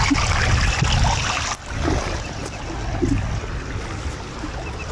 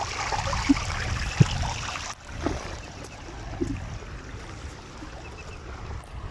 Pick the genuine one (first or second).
first